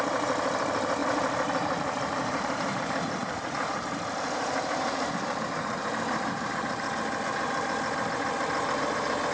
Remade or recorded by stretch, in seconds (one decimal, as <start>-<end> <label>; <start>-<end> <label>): 0.0-1.0 recorded; 1.0-2.8 remade; 2.8-3.2 recorded; 3.2-6.8 remade; 6.8-9.3 recorded